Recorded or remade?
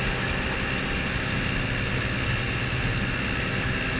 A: recorded